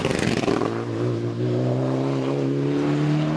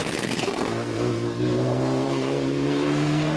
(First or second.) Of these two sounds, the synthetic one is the second